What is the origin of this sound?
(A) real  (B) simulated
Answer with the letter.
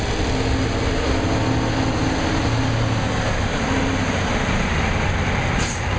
A